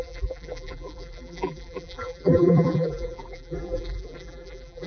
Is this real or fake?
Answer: fake